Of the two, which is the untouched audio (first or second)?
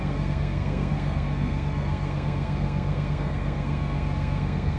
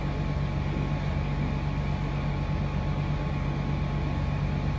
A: second